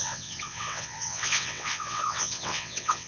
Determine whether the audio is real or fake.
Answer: fake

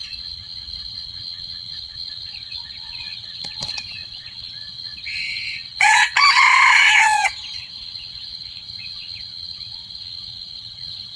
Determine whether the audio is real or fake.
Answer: fake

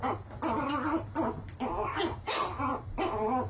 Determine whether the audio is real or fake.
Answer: real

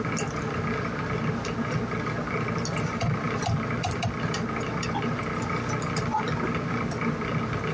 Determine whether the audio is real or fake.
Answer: real